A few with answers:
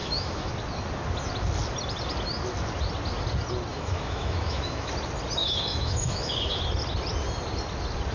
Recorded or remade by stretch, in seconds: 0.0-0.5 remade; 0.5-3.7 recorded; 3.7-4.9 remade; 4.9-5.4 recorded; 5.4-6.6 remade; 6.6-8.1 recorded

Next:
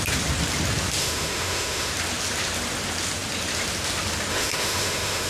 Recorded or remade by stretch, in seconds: 0.0-1.0 recorded; 1.0-1.9 remade; 1.9-4.3 recorded; 4.3-5.3 remade

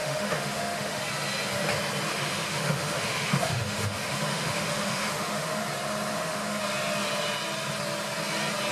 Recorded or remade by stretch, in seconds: 0.0-1.0 remade; 1.0-2.1 recorded; 2.1-5.6 remade; 5.6-6.1 recorded; 6.1-6.6 remade; 6.6-8.7 recorded

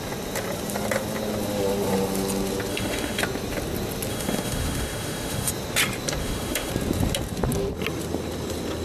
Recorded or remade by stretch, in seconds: 0.0-2.7 recorded; 2.7-3.2 remade; 3.2-4.1 recorded; 4.1-5.5 remade; 5.5-6.2 recorded; 6.2-6.7 remade; 6.7-8.8 recorded

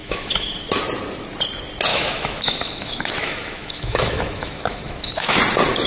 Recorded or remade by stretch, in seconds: 0.0-0.5 remade; 0.5-1.9 recorded; 1.9-5.4 remade; 5.4-5.9 recorded

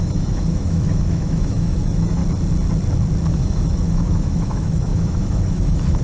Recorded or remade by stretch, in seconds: 0.0-2.2 remade; 2.2-3.3 recorded; 3.3-6.0 remade

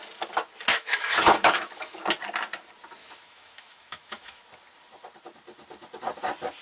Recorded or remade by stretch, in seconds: 0.0-0.7 recorded; 0.7-2.0 remade; 2.0-3.0 recorded; 3.0-4.4 remade; 4.4-6.6 recorded

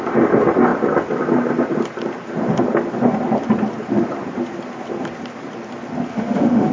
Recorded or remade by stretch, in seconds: 0.0-6.1 recorded; 6.1-6.7 remade